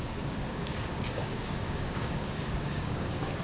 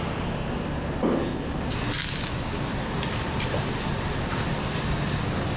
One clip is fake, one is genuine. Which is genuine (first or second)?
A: second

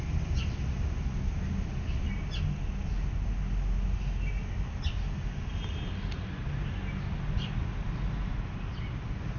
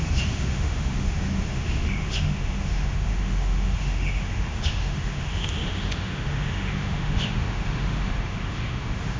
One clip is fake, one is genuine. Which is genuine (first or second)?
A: first